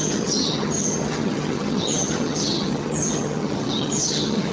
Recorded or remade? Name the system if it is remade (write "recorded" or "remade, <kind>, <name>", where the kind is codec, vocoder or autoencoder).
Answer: remade, vocoder, HiFi-GAN